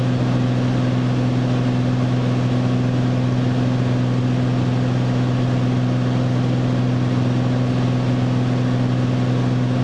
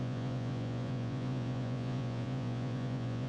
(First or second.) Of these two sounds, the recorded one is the first